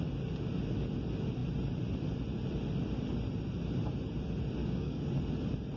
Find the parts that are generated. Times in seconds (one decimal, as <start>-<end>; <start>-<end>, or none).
4.6-5.1